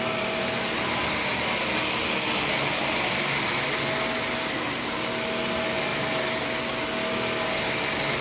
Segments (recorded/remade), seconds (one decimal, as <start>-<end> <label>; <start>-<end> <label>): 0.0-8.2 recorded